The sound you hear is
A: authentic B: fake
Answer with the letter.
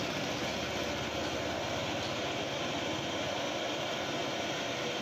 A